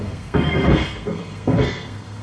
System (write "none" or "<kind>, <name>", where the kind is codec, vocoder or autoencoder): codec, SNAC